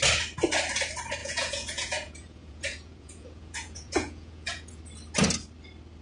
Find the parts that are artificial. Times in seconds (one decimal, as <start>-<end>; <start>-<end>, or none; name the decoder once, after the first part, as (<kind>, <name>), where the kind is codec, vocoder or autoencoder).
1.2-4.8 (vocoder, Vocos)

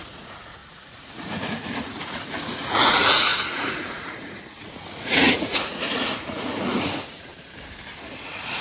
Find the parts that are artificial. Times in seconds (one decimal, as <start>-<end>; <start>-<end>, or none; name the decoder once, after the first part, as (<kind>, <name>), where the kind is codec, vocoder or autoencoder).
0.0-7.3 (vocoder, Vocos); 8.2-8.6

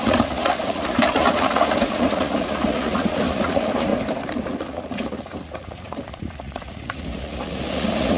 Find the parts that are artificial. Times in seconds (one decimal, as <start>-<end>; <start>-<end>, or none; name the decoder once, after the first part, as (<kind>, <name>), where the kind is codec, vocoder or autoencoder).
0.0-3.9 (vocoder, Vocos); 4.5-8.2

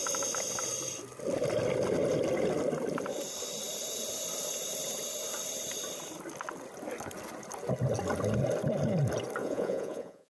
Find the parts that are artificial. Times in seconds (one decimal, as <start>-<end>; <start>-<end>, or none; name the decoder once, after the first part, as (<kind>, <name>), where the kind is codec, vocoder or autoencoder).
9.4-10.3 (vocoder, Vocos)

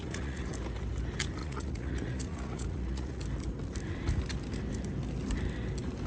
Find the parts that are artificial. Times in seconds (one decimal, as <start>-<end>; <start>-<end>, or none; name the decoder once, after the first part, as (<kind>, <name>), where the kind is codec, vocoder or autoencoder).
0.0-0.5 (vocoder, Vocos); 1.4-3.2

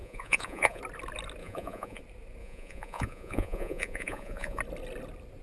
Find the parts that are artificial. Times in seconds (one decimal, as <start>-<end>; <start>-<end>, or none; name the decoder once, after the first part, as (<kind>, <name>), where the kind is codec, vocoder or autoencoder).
0.0-0.8 (vocoder, Vocos); 1.4-2.0; 2.4-4.6

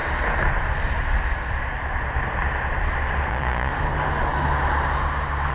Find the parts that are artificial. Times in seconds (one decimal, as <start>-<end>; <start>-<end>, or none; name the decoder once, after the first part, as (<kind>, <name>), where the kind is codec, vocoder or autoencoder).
3.3-3.7 (vocoder, Vocos)